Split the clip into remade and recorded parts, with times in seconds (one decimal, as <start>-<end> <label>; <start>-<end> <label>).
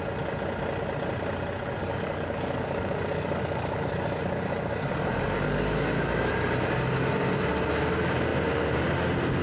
0.0-1.8 recorded; 1.8-6.3 remade; 6.3-9.4 recorded